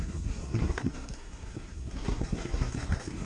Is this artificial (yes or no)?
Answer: yes